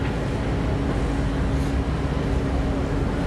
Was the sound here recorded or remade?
recorded